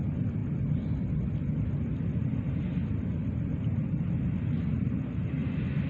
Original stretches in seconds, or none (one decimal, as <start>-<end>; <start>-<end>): 0.0-5.9